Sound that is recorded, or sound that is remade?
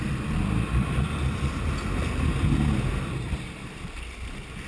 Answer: recorded